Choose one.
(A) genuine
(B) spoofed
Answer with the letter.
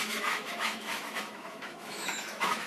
B